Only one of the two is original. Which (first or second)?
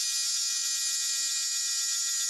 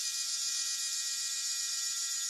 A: first